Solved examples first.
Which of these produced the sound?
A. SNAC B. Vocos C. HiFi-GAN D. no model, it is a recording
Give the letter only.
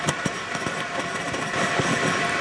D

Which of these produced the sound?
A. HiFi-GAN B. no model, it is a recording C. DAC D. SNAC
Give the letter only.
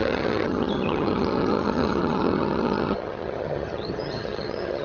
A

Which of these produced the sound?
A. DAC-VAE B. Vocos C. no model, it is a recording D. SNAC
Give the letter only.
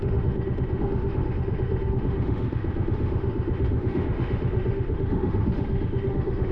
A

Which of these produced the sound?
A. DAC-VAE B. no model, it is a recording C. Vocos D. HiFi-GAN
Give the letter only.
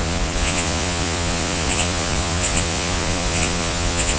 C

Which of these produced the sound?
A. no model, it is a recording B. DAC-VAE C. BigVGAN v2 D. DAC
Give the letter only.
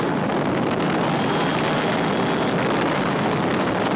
A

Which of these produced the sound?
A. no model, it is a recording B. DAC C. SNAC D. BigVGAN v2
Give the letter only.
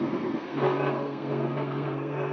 C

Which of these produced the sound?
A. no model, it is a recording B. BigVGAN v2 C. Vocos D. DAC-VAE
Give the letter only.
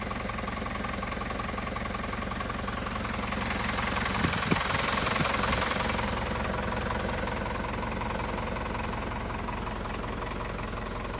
A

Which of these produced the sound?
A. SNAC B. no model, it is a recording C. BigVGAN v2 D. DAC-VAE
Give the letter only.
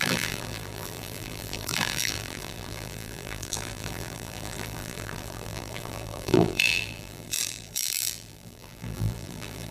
C